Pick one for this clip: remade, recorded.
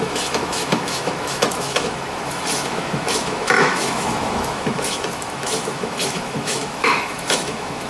remade